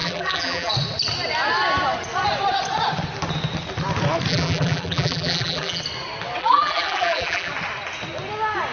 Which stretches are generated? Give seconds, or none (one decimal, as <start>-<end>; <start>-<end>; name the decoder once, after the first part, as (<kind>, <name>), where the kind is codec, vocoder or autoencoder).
0.0-0.7 (vocoder, BigVGAN v2); 4.3-5.8; 6.4-7.5